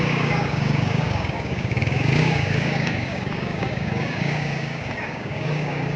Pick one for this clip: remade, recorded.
remade